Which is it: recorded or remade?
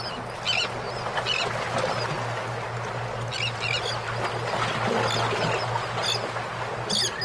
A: recorded